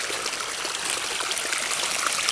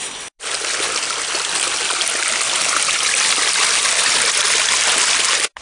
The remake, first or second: second